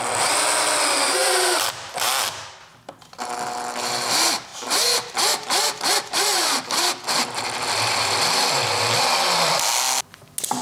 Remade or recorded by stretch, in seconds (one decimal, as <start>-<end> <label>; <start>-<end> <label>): 0.0-1.2 recorded; 1.2-2.1 remade; 2.1-10.6 recorded